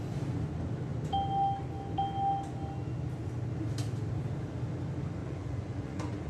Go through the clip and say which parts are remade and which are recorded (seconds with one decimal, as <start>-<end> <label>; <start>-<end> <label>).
0.0-5.2 recorded; 5.2-6.3 remade